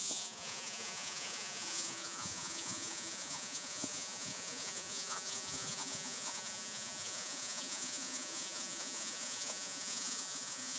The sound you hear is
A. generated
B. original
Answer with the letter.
A